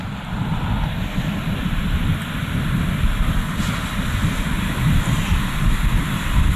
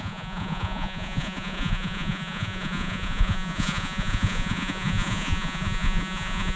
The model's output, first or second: second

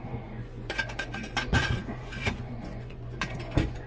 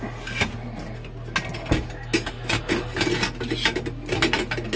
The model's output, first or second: first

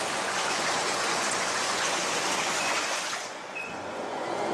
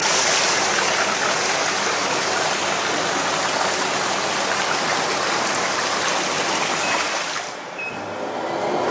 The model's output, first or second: first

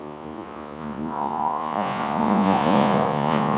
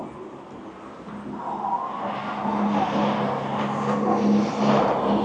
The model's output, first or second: first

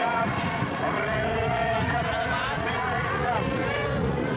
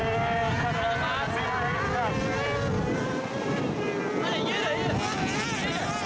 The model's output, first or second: first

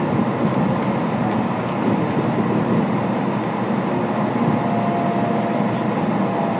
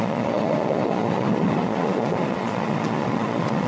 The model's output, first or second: second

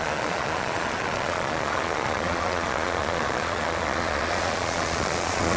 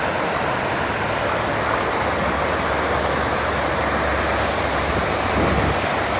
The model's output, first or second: first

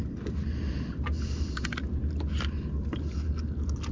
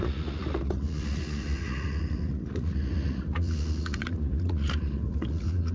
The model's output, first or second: second